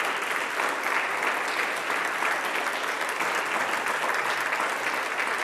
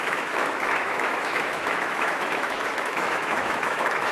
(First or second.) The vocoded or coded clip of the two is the second